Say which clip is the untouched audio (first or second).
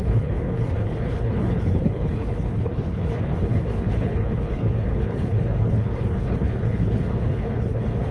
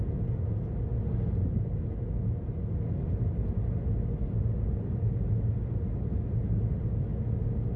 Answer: second